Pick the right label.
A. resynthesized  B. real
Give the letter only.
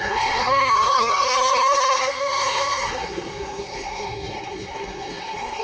A